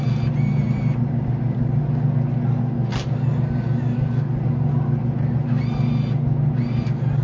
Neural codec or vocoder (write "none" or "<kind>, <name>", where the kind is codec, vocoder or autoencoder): none